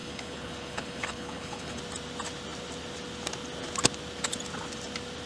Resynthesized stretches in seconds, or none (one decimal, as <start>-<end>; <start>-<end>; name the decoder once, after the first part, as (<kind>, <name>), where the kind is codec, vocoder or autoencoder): 0.0-1.8 (codec, HILCodec)

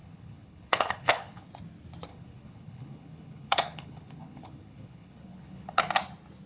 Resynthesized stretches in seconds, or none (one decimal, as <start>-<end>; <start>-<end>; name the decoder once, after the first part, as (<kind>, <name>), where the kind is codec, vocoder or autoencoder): 0.0-1.5 (codec, HILCodec); 2.1-5.8

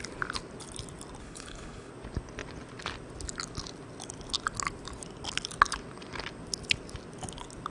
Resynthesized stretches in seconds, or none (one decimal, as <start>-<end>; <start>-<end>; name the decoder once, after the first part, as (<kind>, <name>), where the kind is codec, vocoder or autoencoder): 1.2-1.9 (codec, HILCodec)